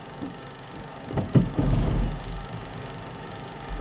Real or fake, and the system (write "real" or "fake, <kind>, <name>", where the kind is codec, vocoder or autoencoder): fake, codec, DAC